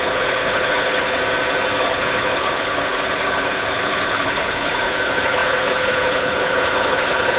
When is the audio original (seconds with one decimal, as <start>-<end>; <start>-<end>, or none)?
1.2-1.8